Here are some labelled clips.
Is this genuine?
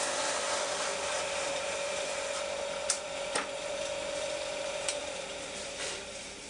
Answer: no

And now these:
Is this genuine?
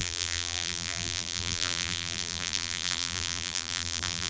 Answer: no